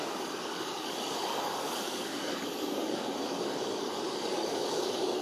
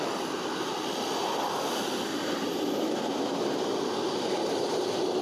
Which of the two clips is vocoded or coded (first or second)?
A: first